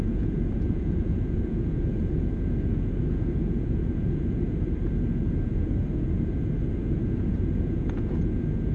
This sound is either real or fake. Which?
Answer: fake